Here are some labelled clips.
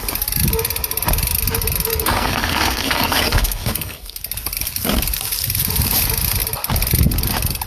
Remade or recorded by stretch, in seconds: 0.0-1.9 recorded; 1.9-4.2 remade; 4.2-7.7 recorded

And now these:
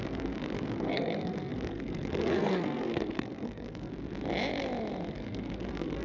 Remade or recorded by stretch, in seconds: 0.0-3.9 remade; 3.9-5.1 recorded; 5.1-6.0 remade

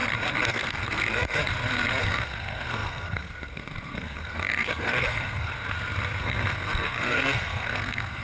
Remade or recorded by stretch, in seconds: 0.0-0.5 recorded; 0.5-1.4 remade; 1.4-2.0 recorded; 2.0-5.5 remade; 5.5-6.2 recorded; 6.2-8.2 remade

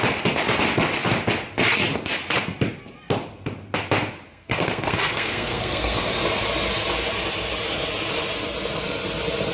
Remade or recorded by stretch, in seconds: 0.0-4.3 recorded; 4.3-6.0 remade; 6.0-9.5 recorded

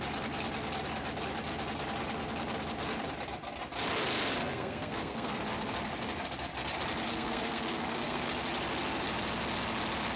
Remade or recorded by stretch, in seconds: 0.0-4.4 recorded; 4.4-5.4 remade; 5.4-7.1 recorded; 7.1-8.3 remade; 8.3-10.2 recorded